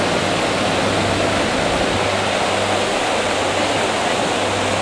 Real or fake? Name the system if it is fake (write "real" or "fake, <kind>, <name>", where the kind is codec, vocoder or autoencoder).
real